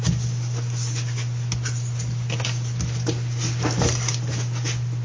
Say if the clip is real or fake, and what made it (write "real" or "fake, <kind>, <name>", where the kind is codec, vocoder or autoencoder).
real